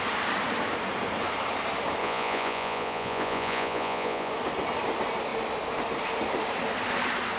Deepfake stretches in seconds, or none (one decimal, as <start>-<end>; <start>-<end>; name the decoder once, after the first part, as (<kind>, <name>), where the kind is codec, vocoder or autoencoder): 2.0-4.3 (vocoder, Vocos)